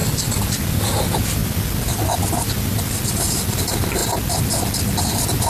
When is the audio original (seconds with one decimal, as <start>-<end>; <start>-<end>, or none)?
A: 0.0-1.0; 1.4-3.1; 4.0-4.8